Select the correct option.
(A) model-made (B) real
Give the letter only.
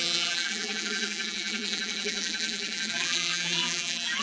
A